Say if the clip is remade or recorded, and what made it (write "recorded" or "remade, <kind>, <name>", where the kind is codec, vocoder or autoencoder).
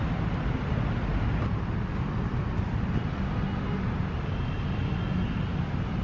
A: recorded